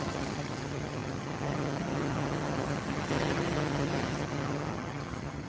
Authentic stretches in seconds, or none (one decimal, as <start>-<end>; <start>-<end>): none